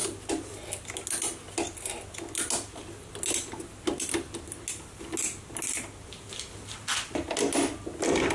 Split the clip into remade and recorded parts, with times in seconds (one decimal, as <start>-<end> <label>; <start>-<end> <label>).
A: 0.0-8.3 recorded